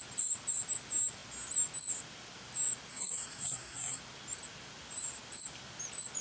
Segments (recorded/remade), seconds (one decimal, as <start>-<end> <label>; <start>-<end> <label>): 0.0-2.9 recorded; 2.9-4.0 remade; 4.0-6.2 recorded